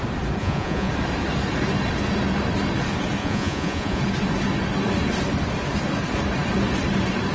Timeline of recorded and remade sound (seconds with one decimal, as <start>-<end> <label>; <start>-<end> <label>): 0.0-0.4 recorded; 0.4-0.9 remade; 0.9-3.2 recorded; 3.2-4.0 remade; 4.0-7.3 recorded